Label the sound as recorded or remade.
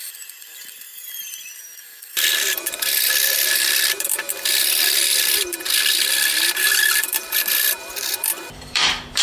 remade